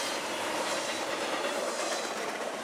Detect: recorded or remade remade